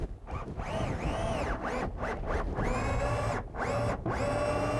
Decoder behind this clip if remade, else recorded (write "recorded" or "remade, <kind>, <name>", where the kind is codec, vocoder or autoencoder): recorded